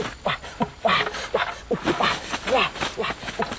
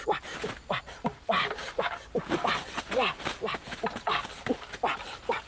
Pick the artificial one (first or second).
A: second